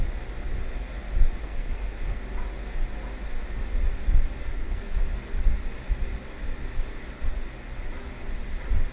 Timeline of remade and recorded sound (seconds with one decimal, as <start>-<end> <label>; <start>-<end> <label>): 0.0-1.4 recorded; 1.4-2.2 remade; 2.2-4.4 recorded; 4.4-5.0 remade; 5.0-8.9 recorded